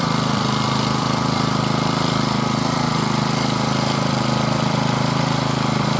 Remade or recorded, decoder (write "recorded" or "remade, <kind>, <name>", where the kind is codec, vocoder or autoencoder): remade, vocoder, BigVGAN v2